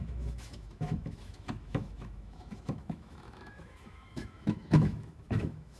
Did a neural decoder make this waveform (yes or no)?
yes